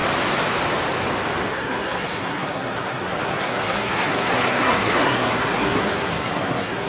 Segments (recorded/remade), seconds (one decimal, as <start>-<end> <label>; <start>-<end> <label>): 0.0-1.5 recorded; 1.5-6.9 remade